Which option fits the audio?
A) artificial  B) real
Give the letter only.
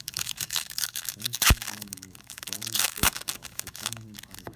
A